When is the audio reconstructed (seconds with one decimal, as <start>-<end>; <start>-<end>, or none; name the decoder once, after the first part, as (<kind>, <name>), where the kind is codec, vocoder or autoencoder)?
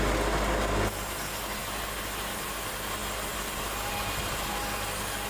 none